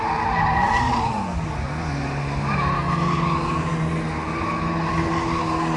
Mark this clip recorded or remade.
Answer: recorded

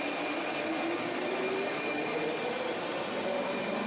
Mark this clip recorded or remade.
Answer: remade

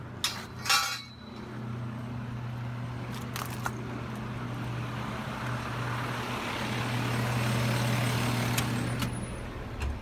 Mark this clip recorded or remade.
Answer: recorded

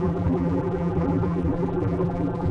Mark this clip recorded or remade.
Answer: remade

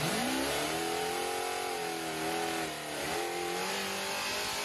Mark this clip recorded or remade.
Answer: recorded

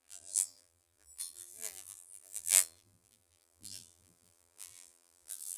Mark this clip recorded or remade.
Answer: remade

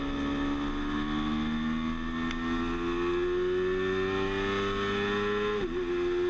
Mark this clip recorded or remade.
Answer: recorded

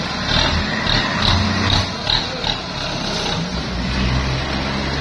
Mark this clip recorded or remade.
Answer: recorded